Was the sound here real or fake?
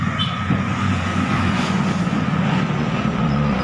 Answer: fake